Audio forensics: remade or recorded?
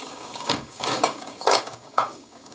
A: remade